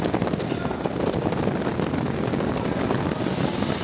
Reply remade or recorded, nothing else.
recorded